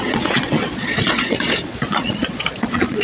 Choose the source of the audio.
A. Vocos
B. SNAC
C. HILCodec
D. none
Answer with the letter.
A